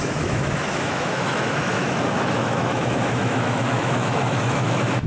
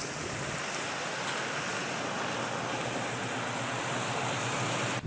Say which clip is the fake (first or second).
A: first